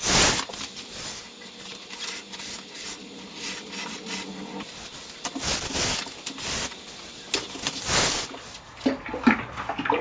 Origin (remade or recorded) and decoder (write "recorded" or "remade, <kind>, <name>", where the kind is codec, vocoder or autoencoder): recorded